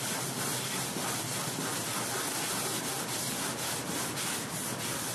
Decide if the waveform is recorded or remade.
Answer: recorded